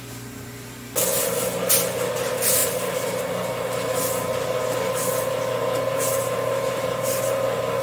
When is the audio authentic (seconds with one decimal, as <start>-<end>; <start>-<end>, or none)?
0.0-7.8